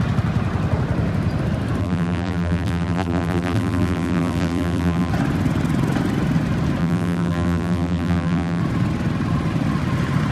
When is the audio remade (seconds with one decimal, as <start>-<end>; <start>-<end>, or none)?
1.8-5.1; 6.8-8.6